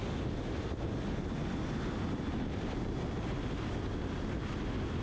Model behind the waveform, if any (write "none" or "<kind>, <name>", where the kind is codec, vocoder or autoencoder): none